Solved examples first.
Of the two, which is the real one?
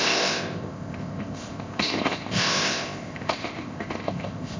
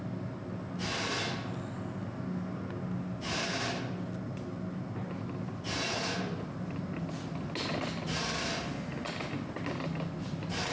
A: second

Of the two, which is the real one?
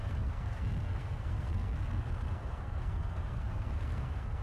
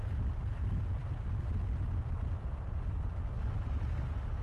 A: second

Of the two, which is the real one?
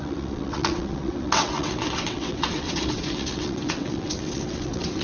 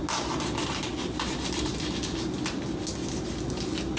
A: second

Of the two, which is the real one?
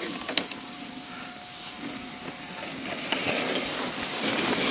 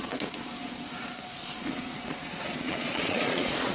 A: first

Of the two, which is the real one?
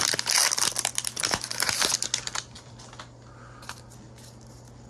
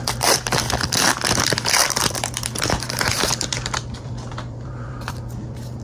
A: first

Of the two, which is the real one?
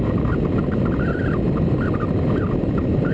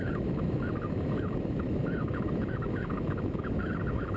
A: first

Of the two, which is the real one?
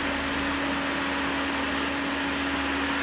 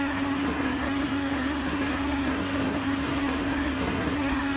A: first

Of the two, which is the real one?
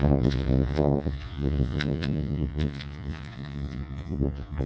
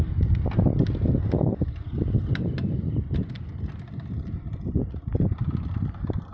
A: second